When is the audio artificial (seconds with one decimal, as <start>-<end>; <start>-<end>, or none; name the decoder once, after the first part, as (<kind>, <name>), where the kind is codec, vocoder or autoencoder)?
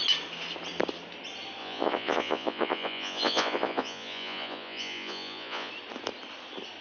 1.6-5.7 (vocoder, Vocos)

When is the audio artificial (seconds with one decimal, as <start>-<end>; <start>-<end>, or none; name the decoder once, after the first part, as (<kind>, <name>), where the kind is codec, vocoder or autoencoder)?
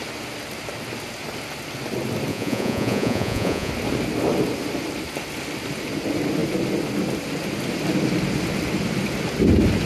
2.3-3.7 (vocoder, Vocos)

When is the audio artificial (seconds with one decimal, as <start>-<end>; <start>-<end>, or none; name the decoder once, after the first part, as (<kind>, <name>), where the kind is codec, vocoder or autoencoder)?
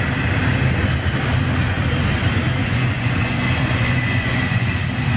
2.6-4.7 (vocoder, Vocos)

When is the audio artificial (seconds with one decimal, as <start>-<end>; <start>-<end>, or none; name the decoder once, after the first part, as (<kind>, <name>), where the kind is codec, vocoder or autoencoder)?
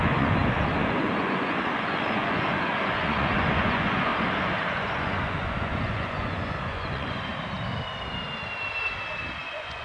0.0-4.1 (vocoder, Vocos); 4.7-7.3; 9.4-9.8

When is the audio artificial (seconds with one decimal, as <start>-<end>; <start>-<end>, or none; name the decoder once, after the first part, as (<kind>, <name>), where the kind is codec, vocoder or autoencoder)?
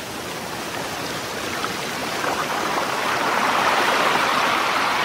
none